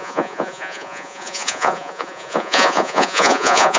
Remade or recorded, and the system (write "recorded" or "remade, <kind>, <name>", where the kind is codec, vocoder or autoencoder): remade, vocoder, Vocos